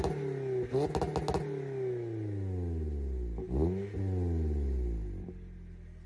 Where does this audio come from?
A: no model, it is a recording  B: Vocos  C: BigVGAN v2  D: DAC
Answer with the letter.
A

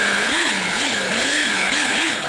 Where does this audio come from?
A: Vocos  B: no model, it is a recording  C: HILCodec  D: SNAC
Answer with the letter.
C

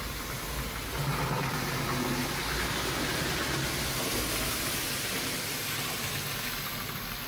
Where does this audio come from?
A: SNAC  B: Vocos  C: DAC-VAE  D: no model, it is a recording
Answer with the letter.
D